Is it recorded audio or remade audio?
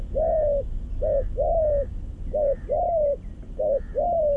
recorded